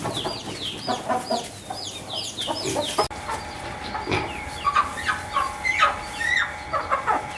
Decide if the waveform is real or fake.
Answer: real